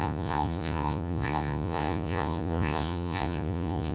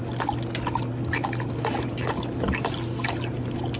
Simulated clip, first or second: first